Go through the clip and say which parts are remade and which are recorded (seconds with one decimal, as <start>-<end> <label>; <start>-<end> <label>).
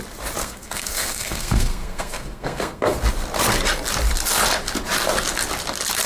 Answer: 0.0-0.4 recorded; 0.4-3.0 remade; 3.0-6.1 recorded